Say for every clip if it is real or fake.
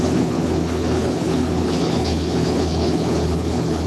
fake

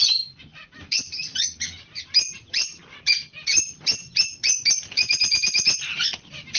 fake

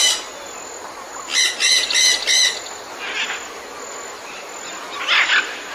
real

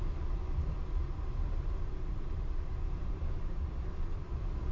real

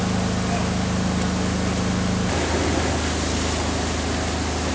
real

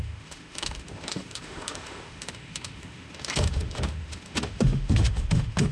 fake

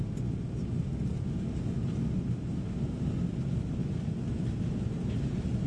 real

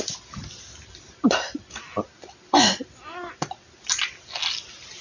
real